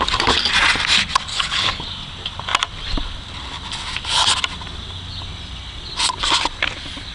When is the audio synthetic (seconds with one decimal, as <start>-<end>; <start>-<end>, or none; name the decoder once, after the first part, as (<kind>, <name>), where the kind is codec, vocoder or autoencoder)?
1.3-1.8 (codec, HILCodec)